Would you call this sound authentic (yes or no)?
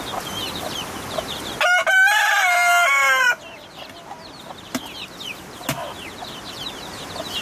yes